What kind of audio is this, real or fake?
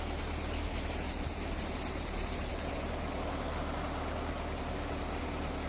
real